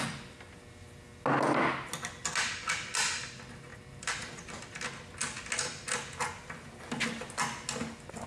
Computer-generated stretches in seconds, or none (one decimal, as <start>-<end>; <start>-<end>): 3.7-4.6